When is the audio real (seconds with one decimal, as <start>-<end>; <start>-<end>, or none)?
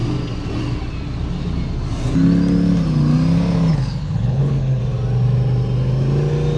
0.0-3.7; 4.8-6.6